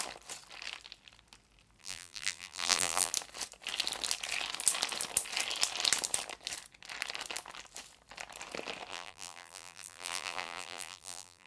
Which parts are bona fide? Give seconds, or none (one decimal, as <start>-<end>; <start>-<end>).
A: 0.0-1.8; 3.1-8.9